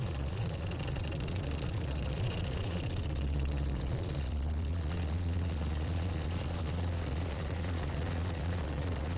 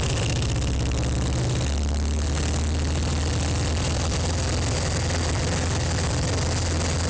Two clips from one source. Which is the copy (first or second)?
first